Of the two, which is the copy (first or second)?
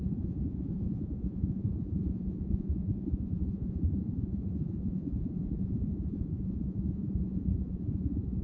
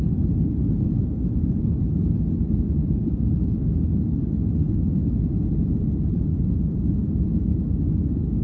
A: first